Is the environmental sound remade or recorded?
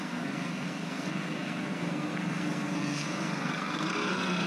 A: remade